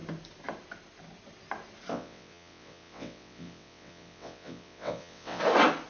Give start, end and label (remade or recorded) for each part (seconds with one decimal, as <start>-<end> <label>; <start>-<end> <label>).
0.0-1.9 recorded; 1.9-5.4 remade; 5.4-5.9 recorded